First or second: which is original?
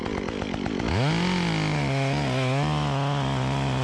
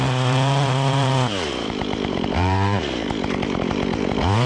first